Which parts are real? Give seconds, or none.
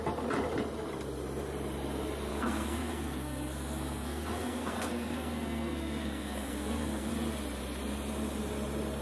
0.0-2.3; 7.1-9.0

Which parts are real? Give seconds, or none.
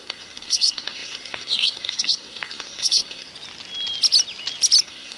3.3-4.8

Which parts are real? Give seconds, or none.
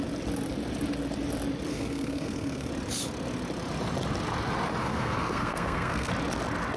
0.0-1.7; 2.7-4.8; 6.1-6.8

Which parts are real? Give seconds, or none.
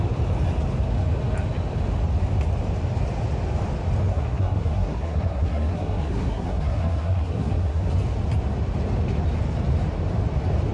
0.0-4.1; 7.9-10.7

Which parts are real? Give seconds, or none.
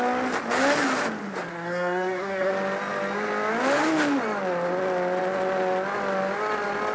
0.0-1.5; 2.5-6.9